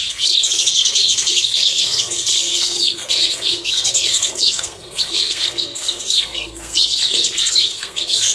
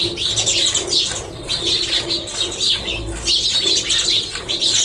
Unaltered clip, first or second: second